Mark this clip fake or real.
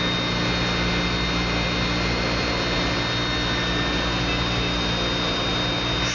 real